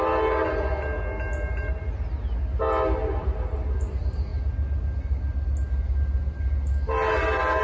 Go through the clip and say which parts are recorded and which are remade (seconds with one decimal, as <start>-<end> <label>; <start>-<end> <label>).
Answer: 0.0-7.6 recorded